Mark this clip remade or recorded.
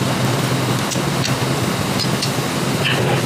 recorded